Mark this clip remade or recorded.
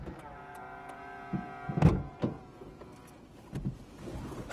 recorded